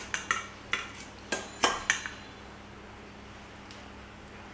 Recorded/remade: recorded